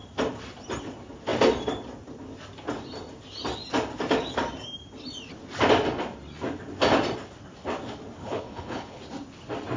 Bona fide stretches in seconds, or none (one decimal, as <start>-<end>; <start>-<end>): 0.0-8.2; 9.0-9.8